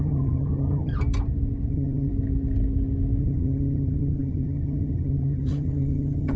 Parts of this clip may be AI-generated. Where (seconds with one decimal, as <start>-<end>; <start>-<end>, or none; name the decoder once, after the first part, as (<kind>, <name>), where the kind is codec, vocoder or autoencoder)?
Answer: 0.0-0.9 (vocoder, HiFi-GAN); 1.7-2.1; 3.2-6.4